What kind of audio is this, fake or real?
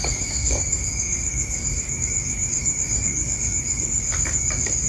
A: fake